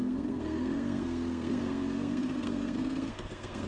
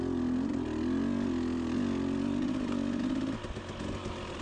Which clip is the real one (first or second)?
second